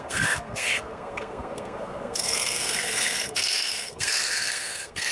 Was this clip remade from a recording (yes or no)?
yes